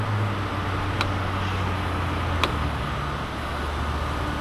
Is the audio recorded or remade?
recorded